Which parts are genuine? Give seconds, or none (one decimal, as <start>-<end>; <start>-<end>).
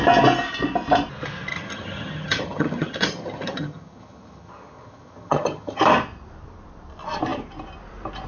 0.0-1.5; 5.8-8.3